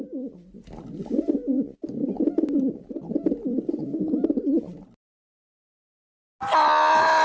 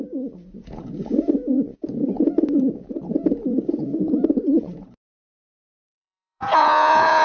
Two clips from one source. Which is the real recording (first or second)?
first